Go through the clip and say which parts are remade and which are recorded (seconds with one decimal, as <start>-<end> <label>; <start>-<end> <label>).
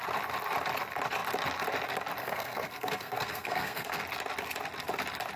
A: 0.0-2.2 recorded; 2.2-4.0 remade; 4.0-5.4 recorded